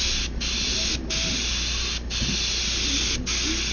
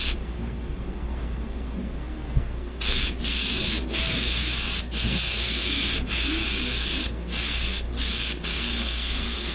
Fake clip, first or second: second